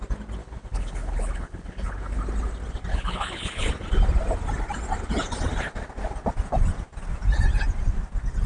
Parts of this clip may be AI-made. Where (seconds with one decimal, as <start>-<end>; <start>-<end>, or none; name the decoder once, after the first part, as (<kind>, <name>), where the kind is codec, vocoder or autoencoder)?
0.4-2.2 (codec, HILCodec); 2.9-3.7